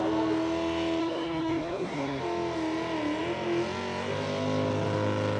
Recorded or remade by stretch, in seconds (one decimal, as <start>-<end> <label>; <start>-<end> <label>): 0.0-1.0 recorded; 1.0-2.2 remade; 2.2-5.4 recorded